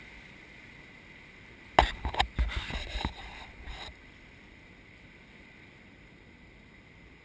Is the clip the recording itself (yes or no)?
yes